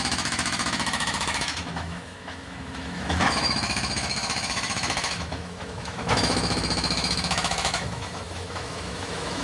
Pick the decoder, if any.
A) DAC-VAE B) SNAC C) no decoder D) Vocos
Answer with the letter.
A